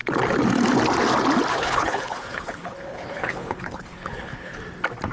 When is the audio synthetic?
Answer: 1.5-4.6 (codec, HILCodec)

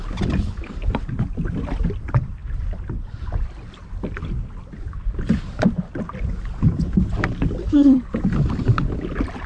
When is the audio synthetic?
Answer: 7.6-8.1 (codec, HILCodec)